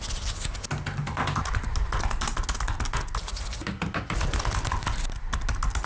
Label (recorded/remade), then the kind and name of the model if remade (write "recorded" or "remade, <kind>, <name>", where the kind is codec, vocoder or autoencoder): recorded